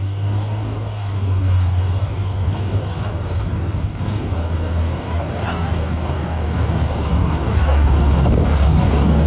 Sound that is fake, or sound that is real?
fake